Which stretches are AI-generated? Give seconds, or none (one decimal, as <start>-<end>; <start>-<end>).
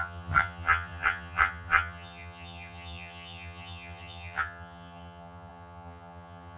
0.0-6.6